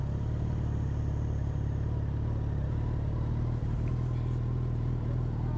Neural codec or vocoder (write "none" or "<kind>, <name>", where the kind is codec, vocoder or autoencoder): none